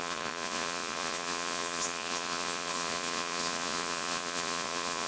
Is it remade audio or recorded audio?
remade